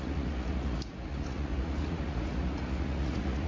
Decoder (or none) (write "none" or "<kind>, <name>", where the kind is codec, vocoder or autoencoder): vocoder, Vocos